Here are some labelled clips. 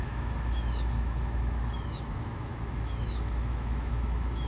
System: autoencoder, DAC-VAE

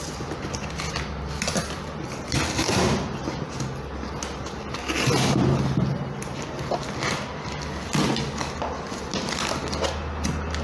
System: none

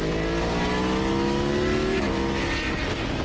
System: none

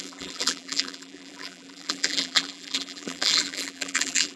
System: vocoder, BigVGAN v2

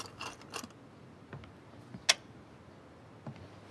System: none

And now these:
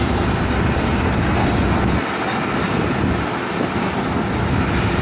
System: none